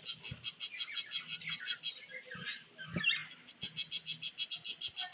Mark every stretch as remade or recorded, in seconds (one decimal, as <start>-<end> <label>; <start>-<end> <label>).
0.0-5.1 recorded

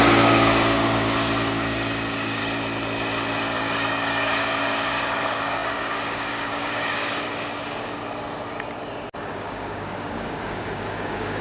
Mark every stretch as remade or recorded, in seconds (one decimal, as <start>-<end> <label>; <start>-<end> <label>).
0.0-2.4 remade; 2.4-3.6 recorded; 3.6-8.0 remade; 8.0-9.3 recorded; 9.3-11.4 remade

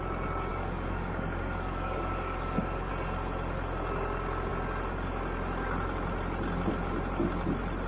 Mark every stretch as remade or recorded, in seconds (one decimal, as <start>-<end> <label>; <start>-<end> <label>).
0.0-0.5 recorded; 0.5-2.9 remade; 2.9-7.9 recorded

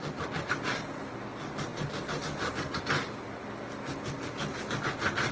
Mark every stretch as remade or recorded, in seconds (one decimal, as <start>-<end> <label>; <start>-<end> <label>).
0.0-5.3 recorded

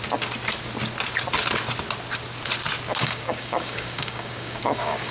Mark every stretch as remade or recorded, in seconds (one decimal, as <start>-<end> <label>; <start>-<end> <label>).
0.0-3.0 recorded; 3.0-5.1 remade

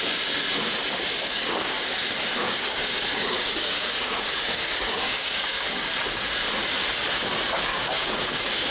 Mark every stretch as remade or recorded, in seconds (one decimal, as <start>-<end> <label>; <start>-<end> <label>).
0.0-0.8 recorded; 0.8-1.9 remade; 1.9-2.4 recorded; 2.4-5.9 remade; 5.9-7.7 recorded; 7.7-8.7 remade

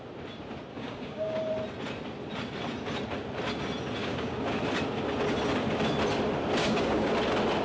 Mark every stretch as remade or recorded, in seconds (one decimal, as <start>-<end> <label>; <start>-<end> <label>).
0.0-0.7 recorded; 0.7-1.4 remade; 1.4-4.0 recorded; 4.0-4.6 remade; 4.6-6.6 recorded; 6.6-7.1 remade; 7.1-7.6 recorded